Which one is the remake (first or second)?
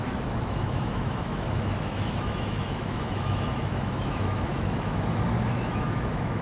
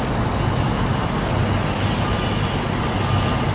first